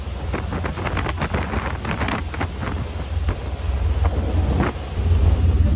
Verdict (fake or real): real